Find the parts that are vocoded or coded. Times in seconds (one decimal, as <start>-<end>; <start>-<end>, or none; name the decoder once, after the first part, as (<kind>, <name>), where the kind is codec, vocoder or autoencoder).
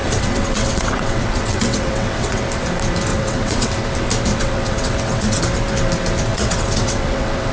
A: 0.0-2.4 (vocoder, WaveNeXt); 3.1-3.7; 4.3-5.4; 6.3-7.5